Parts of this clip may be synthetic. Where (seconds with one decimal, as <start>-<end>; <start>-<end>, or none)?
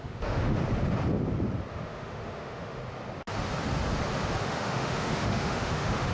0.0-0.6; 1.7-2.8; 4.4-6.1